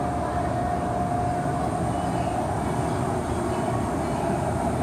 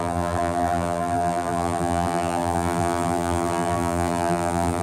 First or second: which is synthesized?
second